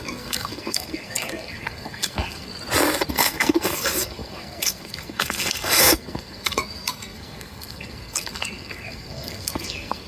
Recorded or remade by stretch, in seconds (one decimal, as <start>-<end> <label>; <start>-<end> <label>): 0.0-2.5 remade; 2.5-3.1 recorded; 3.1-10.1 remade